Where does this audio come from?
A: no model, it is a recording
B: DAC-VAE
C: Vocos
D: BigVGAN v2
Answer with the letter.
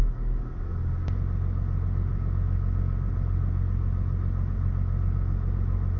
A